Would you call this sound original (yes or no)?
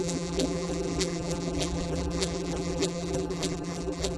no